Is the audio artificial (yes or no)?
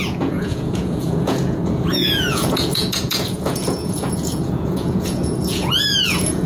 yes